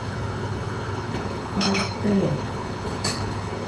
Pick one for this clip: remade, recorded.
remade